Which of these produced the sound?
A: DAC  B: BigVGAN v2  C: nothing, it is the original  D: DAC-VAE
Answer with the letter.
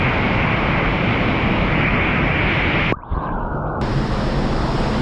C